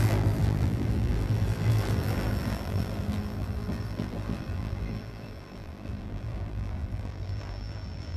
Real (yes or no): no